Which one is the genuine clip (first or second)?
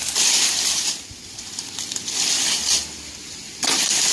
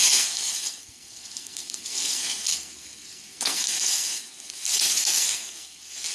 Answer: first